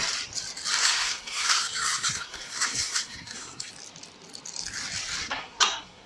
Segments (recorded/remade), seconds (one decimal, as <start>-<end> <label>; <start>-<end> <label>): 0.0-0.8 recorded; 0.8-3.7 remade; 3.7-5.2 recorded; 5.2-6.1 remade